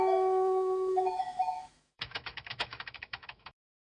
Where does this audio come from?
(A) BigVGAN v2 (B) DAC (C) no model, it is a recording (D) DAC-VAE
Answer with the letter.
D